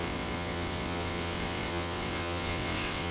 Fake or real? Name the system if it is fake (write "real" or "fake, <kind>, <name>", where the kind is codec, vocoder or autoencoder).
fake, vocoder, WaveNeXt